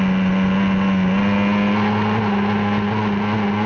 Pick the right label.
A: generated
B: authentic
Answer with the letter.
B